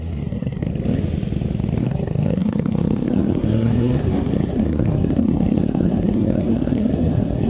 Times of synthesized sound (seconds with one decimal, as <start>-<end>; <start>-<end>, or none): 0.0-0.7; 1.8-7.5

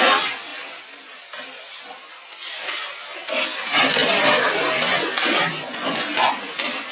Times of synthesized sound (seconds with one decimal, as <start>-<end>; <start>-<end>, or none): 5.5-6.3

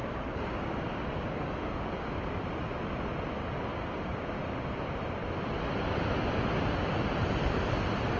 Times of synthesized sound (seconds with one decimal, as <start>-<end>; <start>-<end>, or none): 0.0-2.4; 3.7-4.4

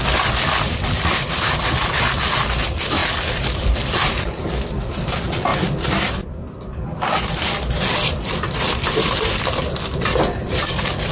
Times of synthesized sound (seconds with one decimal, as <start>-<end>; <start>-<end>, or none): none

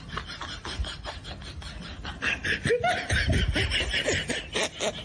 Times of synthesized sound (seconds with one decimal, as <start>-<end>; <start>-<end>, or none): none

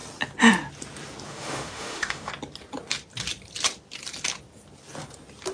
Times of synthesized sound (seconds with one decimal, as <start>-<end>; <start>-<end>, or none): 1.3-2.3

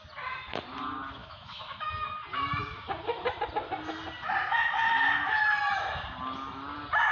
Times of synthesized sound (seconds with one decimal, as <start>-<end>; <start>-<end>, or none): 1.2-1.9

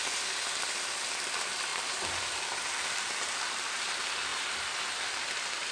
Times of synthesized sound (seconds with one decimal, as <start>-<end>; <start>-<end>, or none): 1.7-3.8